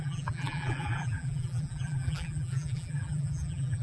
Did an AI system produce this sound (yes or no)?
yes